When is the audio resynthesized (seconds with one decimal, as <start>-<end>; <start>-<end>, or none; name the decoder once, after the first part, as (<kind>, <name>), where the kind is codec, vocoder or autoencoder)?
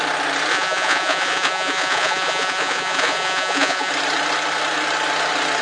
0.5-3.9 (vocoder, Vocos)